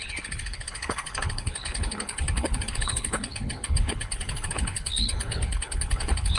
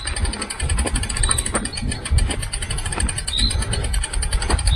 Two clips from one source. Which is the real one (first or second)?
second